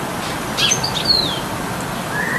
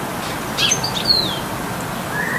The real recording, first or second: second